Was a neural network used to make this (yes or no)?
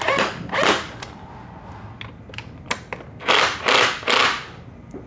no